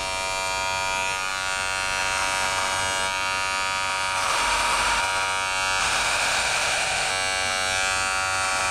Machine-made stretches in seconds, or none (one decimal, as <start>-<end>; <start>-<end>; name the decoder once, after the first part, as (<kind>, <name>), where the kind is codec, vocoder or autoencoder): 4.3-5.0 (autoencoder, DAC-VAE); 5.8-7.1